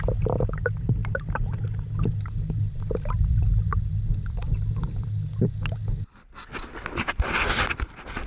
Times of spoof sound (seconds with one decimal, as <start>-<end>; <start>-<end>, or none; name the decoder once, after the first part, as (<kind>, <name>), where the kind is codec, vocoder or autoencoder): none